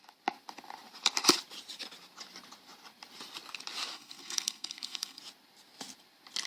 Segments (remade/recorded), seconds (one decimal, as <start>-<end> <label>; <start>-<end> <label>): 0.0-3.9 recorded; 3.9-5.2 remade; 5.2-6.5 recorded